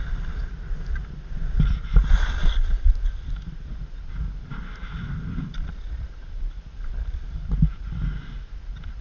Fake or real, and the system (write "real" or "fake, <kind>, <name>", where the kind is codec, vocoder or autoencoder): real